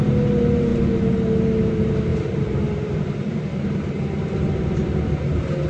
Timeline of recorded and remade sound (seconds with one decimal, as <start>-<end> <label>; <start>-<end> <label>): 0.0-2.1 recorded; 2.1-5.2 remade; 5.2-5.7 recorded